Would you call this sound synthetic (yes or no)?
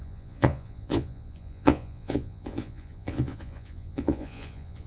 yes